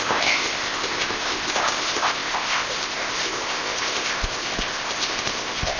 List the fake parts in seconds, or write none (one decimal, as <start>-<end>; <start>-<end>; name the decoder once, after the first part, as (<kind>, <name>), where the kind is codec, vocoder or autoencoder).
0.0-5.8 (codec, ZipCodec)